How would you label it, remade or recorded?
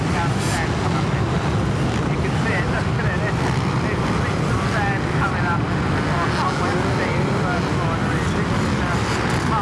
recorded